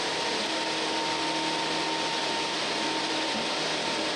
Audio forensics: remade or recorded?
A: recorded